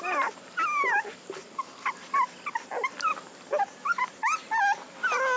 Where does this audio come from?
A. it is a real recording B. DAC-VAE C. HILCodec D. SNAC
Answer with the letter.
A